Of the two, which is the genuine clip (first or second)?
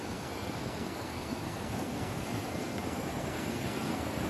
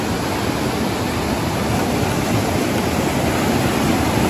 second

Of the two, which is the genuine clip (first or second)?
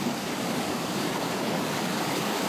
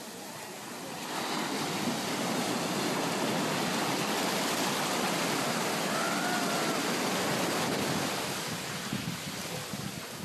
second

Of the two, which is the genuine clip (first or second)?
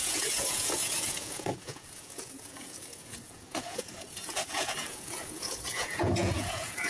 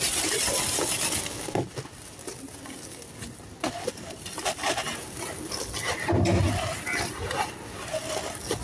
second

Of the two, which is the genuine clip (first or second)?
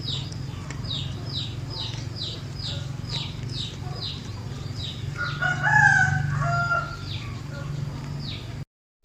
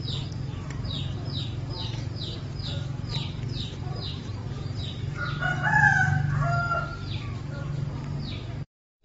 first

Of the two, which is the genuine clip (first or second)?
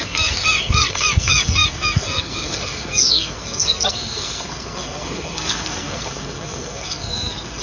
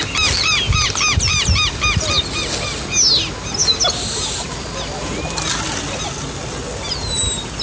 second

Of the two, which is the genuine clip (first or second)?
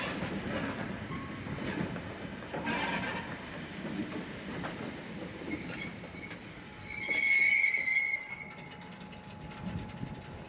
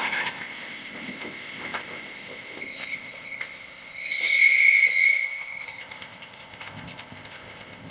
first